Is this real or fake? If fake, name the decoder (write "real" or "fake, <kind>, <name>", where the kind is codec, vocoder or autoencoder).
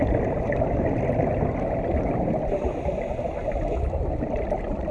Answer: real